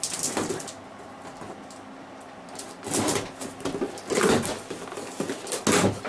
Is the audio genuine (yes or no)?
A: yes